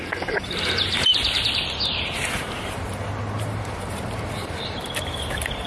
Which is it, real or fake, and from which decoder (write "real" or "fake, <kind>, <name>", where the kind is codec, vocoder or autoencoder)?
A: fake, vocoder, BigVGAN v2